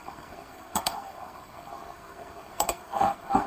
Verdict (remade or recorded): remade